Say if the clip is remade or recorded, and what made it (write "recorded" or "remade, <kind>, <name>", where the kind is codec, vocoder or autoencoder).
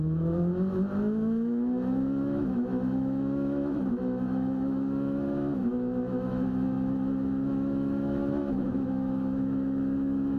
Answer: remade, autoencoder, DAC-VAE